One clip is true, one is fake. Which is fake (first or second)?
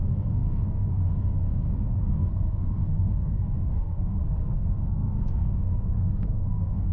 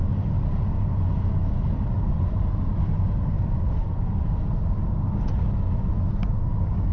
first